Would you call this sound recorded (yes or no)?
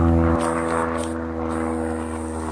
yes